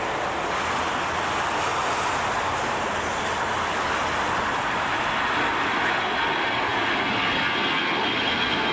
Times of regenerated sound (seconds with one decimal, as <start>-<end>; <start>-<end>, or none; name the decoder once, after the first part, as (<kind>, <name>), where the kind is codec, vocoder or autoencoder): none